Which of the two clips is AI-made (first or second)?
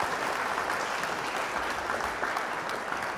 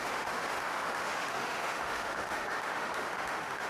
second